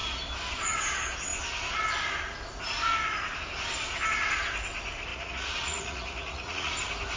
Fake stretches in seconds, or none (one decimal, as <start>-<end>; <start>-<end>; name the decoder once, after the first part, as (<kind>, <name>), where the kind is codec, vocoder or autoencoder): 5.1-6.7 (vocoder, Vocos)